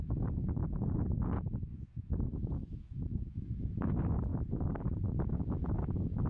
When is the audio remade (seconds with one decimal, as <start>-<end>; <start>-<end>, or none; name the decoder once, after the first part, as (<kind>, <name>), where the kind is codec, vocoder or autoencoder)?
0.0-0.6 (autoencoder, DAC-VAE); 1.4-4.3; 5.1-6.3